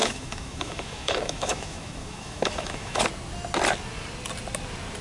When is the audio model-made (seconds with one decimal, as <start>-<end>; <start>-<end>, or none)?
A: 0.0-3.0